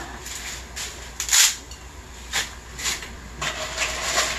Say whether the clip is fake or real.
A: real